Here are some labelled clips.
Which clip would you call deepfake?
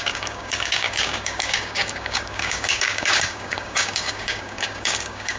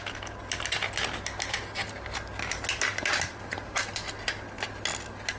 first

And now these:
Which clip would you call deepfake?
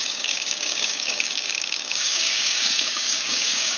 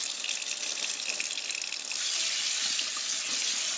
first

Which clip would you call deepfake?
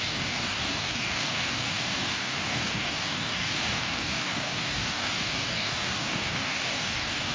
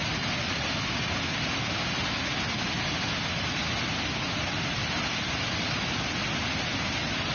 first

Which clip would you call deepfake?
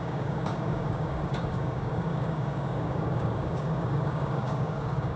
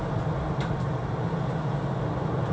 first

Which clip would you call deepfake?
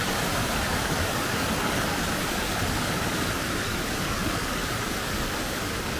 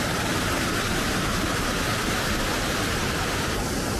first